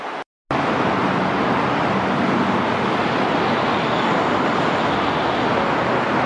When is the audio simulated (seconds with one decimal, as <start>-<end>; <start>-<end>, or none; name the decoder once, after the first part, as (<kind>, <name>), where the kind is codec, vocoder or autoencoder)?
none